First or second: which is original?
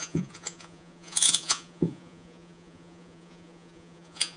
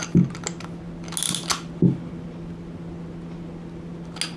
second